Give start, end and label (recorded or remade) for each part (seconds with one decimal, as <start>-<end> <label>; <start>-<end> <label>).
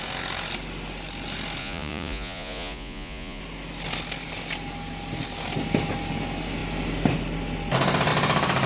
0.0-1.6 recorded; 1.6-3.4 remade; 3.4-8.7 recorded